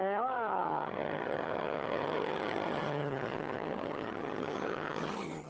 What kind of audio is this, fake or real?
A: fake